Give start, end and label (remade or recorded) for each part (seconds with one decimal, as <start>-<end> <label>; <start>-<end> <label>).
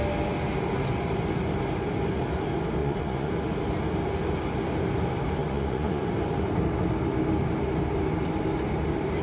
0.0-2.8 recorded; 2.8-3.3 remade; 3.3-5.4 recorded; 5.4-6.0 remade; 6.0-9.2 recorded